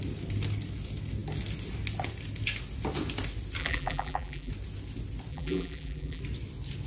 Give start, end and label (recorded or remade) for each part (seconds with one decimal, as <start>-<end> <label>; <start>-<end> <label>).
0.0-3.6 recorded; 3.6-4.5 remade; 4.5-5.3 recorded; 5.3-6.2 remade; 6.2-6.9 recorded